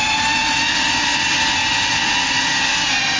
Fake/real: real